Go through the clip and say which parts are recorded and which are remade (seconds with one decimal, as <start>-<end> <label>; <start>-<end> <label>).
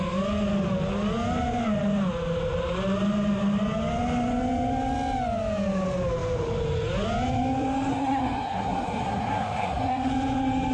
0.0-7.9 recorded; 7.9-10.1 remade; 10.1-10.7 recorded